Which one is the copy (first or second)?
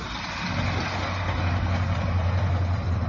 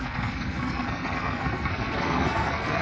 second